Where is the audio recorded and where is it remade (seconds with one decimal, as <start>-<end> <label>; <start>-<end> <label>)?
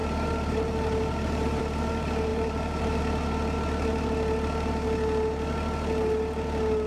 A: 0.0-1.6 remade; 1.6-2.3 recorded; 2.3-3.0 remade; 3.0-6.9 recorded